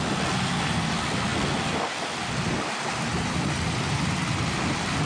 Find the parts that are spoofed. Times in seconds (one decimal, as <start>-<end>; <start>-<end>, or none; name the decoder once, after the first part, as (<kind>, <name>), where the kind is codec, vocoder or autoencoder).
none